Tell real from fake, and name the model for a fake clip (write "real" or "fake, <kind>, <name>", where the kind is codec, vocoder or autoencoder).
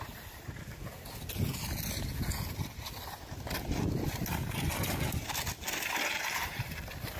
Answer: real